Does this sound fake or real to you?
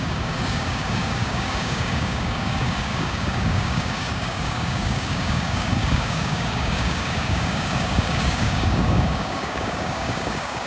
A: fake